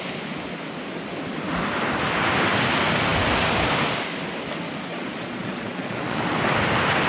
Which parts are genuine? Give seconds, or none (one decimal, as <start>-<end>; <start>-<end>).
0.0-4.9; 6.2-7.1